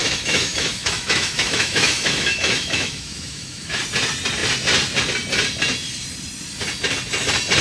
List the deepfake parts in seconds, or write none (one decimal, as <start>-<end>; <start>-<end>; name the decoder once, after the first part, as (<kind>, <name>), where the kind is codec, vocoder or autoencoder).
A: 0.0-3.8 (autoencoder, DAC-VAE)